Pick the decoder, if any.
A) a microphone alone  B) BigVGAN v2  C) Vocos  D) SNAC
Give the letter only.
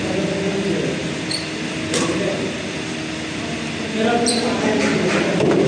A